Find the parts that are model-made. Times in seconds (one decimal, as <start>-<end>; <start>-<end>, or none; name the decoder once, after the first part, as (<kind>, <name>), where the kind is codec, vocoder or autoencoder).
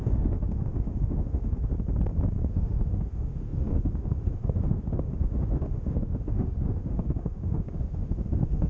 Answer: 0.0-1.7 (autoencoder, DAC-VAE); 2.5-8.7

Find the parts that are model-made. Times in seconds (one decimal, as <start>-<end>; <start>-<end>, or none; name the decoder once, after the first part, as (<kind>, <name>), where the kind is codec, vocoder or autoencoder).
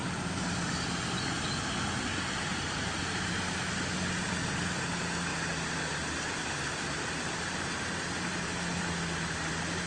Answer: 2.1-3.3 (vocoder, BigVGAN v2); 5.3-6.5